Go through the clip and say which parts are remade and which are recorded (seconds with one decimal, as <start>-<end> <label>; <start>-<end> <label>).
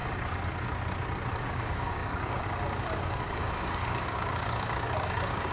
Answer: 0.0-1.4 recorded; 1.4-5.5 remade